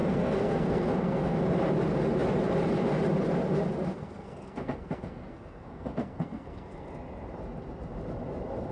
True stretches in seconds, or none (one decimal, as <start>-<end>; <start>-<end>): 1.4-3.9; 6.9-8.7